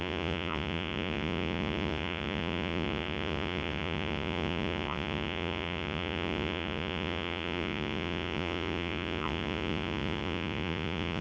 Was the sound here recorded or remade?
remade